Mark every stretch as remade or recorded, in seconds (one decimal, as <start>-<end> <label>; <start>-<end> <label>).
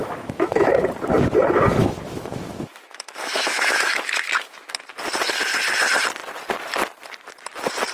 0.0-0.8 remade; 0.8-1.8 recorded; 1.8-4.9 remade; 4.9-7.9 recorded